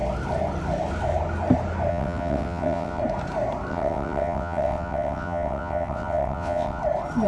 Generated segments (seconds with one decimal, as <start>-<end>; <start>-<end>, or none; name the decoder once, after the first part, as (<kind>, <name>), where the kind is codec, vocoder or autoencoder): 1.9-3.0 (vocoder, WaveNeXt); 3.7-6.8

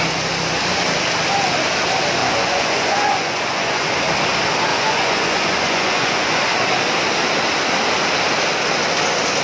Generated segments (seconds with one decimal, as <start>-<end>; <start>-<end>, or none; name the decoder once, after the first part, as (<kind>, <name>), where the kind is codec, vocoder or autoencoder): 2.2-3.9 (vocoder, Vocos); 4.7-6.4

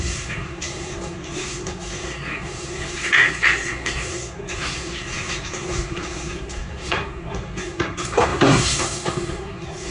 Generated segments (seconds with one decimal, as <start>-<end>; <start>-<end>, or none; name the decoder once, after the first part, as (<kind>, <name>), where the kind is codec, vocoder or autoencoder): 0.0-9.9 (codec, SNAC)

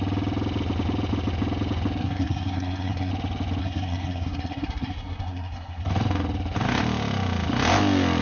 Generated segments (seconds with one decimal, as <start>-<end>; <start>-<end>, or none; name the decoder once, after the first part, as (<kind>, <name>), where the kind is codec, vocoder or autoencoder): 2.0-3.1 (codec, SNAC); 3.6-5.9

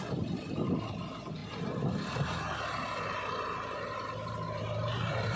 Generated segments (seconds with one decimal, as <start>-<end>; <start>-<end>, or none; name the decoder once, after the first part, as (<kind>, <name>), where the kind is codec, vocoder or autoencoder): none

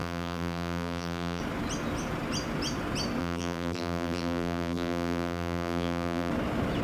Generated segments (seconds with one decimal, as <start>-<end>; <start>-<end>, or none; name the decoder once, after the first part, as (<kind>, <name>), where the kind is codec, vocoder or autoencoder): 0.0-1.4 (vocoder, BigVGAN v2); 3.2-6.3